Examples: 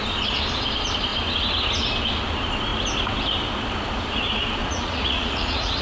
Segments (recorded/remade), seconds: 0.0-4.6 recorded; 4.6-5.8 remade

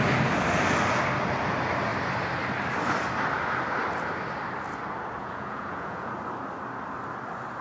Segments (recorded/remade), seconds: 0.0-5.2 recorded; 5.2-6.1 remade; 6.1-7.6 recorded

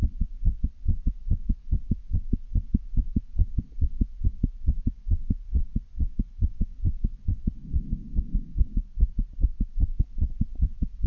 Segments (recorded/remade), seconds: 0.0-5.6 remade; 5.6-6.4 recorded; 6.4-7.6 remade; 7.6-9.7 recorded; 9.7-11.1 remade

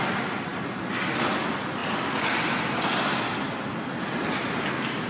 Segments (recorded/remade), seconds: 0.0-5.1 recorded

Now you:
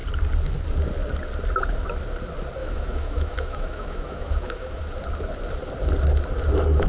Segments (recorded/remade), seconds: 0.0-2.6 recorded; 2.6-4.8 remade; 4.8-6.9 recorded

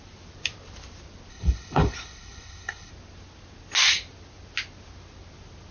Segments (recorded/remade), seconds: 0.0-1.3 recorded; 1.3-2.9 remade; 2.9-5.7 recorded

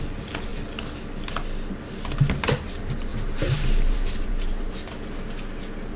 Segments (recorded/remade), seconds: 0.0-3.1 recorded; 3.1-4.7 remade; 4.7-6.0 recorded